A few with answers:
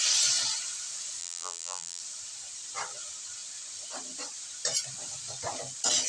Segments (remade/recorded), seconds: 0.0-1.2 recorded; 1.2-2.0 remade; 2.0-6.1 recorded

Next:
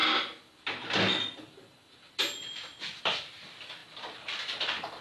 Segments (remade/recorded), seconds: 0.0-5.0 recorded

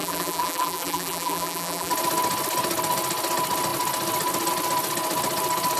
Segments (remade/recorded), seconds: 0.0-1.9 remade; 1.9-5.8 recorded

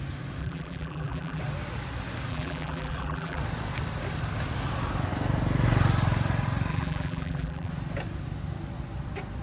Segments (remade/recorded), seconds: 0.0-0.4 recorded; 0.4-1.4 remade; 1.4-2.3 recorded; 2.3-3.4 remade; 3.4-6.7 recorded; 6.7-7.7 remade; 7.7-9.4 recorded

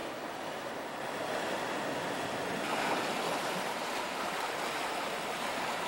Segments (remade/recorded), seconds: 0.0-3.4 recorded; 3.4-4.3 remade; 4.3-5.9 recorded

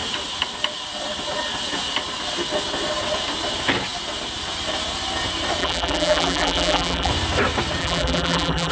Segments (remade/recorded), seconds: 0.0-5.6 recorded; 5.6-7.1 remade; 7.1-7.8 recorded; 7.8-8.7 remade

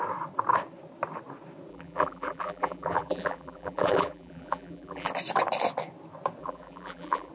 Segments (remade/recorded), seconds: 0.0-1.7 recorded; 1.7-5.1 remade; 5.1-6.4 recorded; 6.4-7.3 remade